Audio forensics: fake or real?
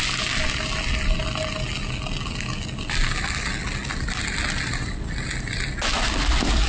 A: real